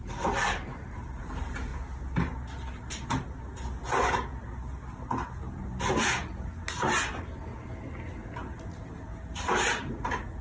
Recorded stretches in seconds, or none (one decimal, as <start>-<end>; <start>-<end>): 0.0-10.4